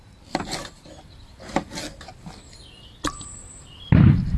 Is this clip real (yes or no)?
yes